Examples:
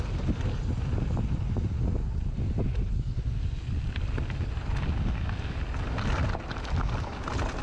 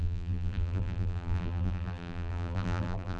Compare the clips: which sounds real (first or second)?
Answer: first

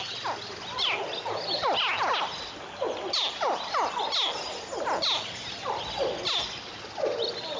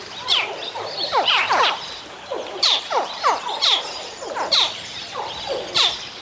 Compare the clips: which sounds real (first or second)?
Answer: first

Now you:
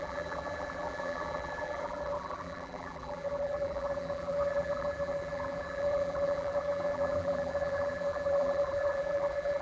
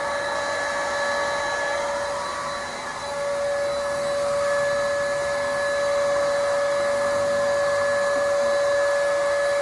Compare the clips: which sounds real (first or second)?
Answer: second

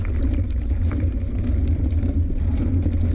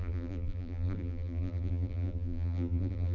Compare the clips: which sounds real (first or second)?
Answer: first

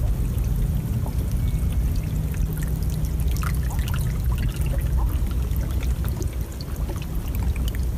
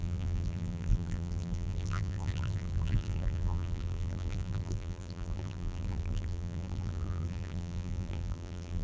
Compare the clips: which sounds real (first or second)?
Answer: first